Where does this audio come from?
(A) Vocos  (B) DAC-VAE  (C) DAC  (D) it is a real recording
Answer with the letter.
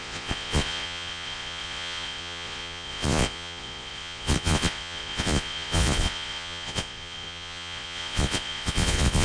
A